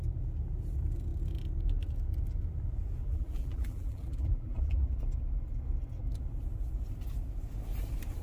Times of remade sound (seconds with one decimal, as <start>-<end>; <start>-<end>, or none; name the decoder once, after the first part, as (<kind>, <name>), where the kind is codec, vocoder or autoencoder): 3.0-4.9 (vocoder, BigVGAN v2)